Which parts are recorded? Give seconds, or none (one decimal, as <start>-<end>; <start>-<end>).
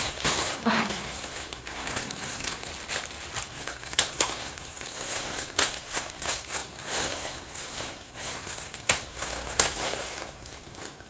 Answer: 2.7-3.5